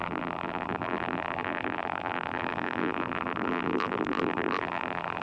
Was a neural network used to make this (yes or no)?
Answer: yes